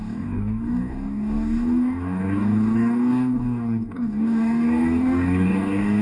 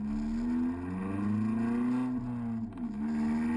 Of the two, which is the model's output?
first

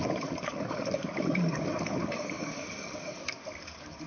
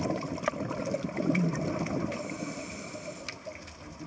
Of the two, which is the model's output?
first